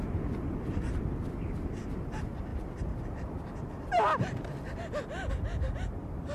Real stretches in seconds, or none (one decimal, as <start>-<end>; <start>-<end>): 0.0-2.5; 5.3-6.3